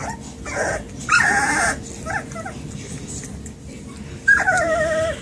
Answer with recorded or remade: recorded